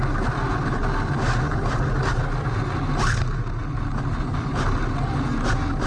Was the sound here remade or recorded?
recorded